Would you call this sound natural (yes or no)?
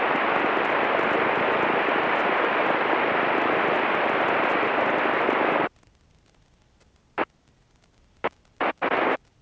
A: yes